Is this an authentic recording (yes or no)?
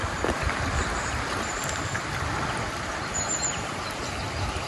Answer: no